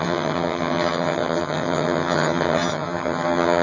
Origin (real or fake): fake